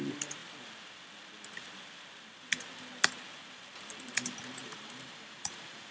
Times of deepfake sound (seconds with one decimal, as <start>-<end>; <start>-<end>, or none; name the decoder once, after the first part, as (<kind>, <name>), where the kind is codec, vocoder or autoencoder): 4.6-5.9 (vocoder, BigVGAN v2)